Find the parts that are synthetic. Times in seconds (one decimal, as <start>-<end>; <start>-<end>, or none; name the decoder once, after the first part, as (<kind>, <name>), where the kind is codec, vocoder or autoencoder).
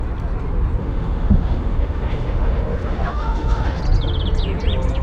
0.8-3.8 (autoencoder, DAC-VAE)